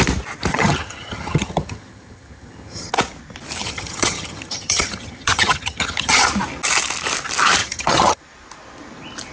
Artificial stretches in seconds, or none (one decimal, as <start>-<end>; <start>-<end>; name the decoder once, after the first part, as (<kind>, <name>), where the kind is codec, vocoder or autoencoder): 0.5-2.9 (vocoder, HiFi-GAN); 3.6-6.3; 7.6-8.2

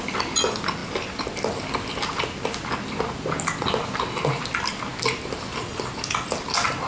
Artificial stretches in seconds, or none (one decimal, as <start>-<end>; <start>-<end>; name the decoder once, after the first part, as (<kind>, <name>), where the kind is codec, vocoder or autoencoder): none

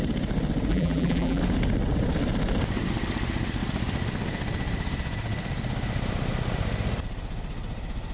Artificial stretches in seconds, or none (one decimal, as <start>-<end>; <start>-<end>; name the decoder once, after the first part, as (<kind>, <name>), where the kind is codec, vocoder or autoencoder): 0.7-1.4 (vocoder, BigVGAN v2)

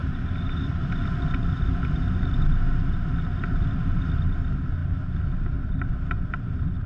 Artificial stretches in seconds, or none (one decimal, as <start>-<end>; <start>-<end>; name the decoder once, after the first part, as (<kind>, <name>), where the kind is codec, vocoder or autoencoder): none

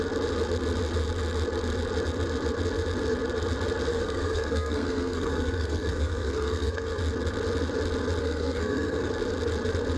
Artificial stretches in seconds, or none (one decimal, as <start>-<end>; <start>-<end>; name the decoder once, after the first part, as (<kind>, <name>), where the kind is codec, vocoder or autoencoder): 3.9-7.0 (codec, SNAC); 8.2-9.1